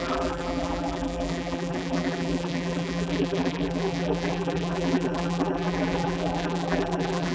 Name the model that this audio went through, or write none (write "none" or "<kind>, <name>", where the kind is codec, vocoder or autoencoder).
vocoder, BigVGAN v2